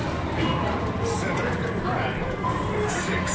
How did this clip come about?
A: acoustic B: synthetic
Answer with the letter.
A